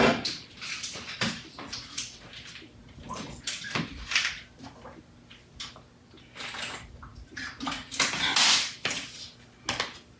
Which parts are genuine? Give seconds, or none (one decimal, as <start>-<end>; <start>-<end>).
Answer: 0.0-10.2